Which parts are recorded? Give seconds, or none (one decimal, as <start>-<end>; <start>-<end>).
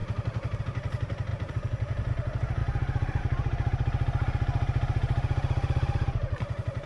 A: 0.0-1.3; 2.1-2.6; 3.2-6.9